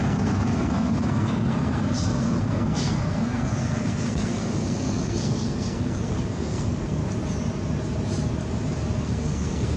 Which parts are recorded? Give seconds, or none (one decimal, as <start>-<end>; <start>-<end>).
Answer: 7.0-9.0